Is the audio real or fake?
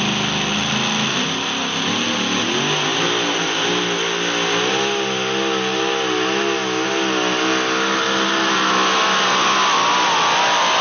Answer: real